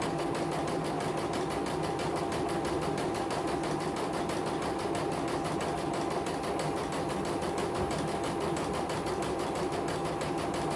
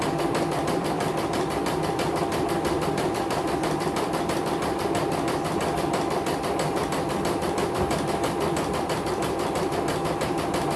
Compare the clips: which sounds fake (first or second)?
second